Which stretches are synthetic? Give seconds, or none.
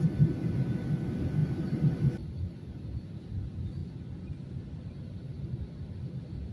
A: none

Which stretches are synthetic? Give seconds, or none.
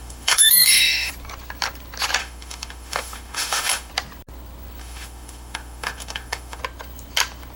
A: 0.0-1.1; 2.2-3.9; 4.8-6.6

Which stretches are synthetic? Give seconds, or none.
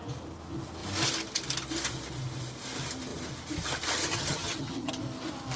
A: 4.0-4.9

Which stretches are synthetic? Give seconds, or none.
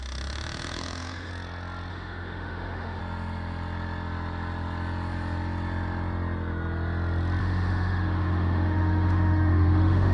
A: 0.0-1.3; 1.9-3.0; 7.4-10.1